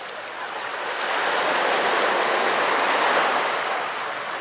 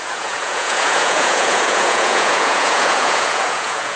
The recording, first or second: first